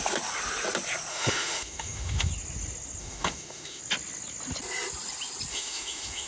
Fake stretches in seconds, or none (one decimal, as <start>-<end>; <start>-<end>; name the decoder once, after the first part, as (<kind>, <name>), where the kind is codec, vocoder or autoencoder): 1.1-2.3 (autoencoder, DAC-VAE); 3.0-3.8; 5.5-6.3